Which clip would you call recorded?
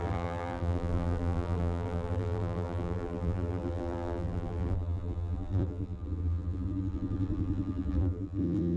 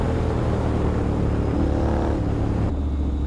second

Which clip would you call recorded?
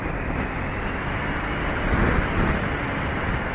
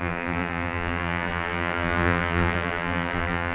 first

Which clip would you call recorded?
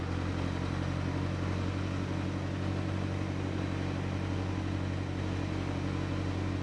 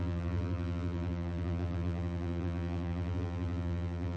first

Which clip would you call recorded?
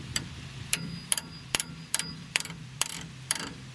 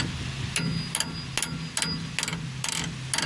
second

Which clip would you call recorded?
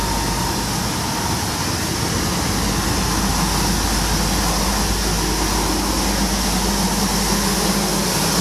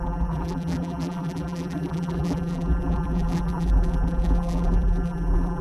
first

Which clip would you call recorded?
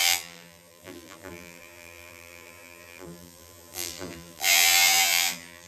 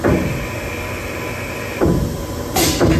second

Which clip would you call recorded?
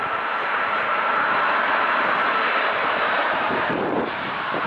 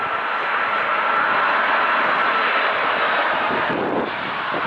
second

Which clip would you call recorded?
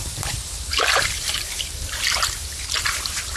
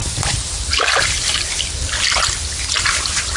second